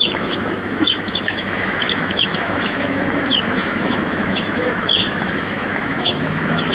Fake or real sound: fake